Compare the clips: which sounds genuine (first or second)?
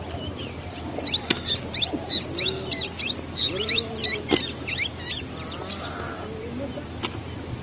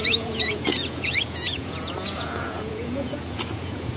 first